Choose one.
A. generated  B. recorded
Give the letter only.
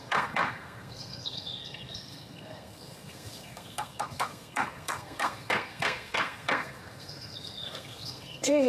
A